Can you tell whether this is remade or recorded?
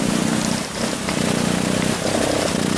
recorded